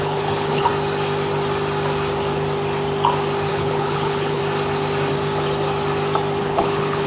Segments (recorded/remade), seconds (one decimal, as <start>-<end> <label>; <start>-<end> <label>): 0.0-0.7 remade; 0.7-3.5 recorded; 3.5-4.4 remade; 4.4-6.4 recorded; 6.4-7.1 remade